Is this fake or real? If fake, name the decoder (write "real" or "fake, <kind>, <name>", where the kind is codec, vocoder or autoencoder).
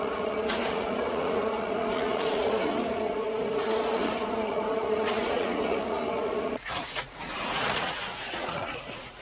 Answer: fake, vocoder, Vocos